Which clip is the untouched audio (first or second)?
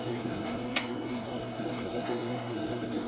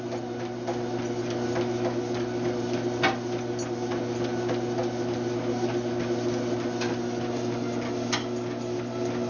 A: second